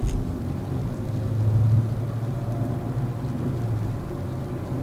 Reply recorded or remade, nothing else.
recorded